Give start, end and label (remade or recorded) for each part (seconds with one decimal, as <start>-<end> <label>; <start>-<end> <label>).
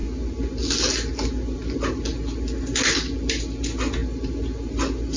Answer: 0.0-5.2 recorded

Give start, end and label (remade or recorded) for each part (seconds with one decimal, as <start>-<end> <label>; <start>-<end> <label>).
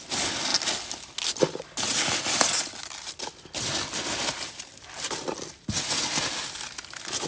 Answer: 0.0-7.3 recorded